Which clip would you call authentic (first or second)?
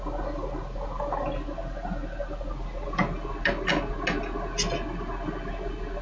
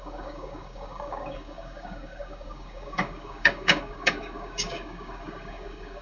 first